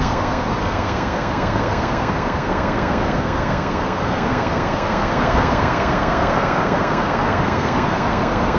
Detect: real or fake fake